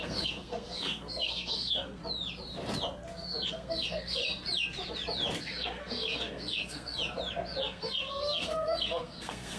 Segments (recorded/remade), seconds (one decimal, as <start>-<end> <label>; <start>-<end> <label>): 0.0-2.0 remade; 2.0-3.1 recorded; 3.1-4.2 remade; 4.2-5.4 recorded; 5.4-7.0 remade; 7.0-7.6 recorded; 7.6-9.6 remade